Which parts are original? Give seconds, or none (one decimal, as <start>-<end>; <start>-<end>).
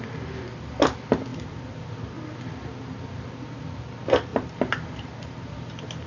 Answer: 0.0-1.3; 1.9-4.3